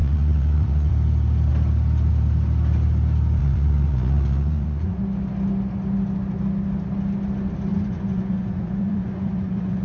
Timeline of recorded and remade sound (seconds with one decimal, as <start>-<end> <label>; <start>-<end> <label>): 0.0-0.9 remade; 0.9-3.4 recorded; 3.4-5.0 remade; 5.0-7.7 recorded; 7.7-9.8 remade